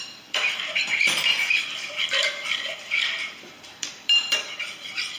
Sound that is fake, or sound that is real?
fake